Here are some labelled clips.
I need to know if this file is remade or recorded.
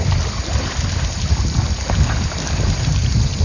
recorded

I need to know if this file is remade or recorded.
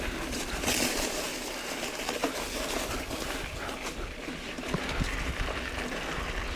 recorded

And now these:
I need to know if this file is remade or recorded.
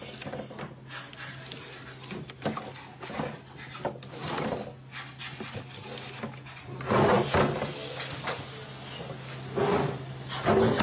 recorded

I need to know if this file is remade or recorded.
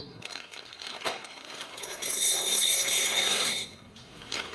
remade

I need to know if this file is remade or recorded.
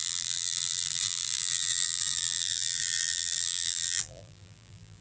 remade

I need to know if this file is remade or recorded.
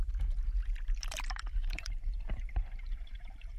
remade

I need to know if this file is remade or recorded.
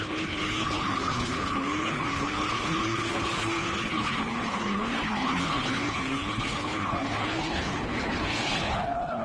remade